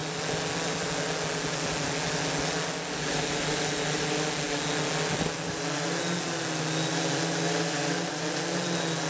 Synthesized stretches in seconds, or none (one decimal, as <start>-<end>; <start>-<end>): none